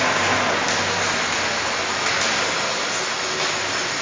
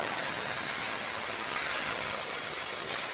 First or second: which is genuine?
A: first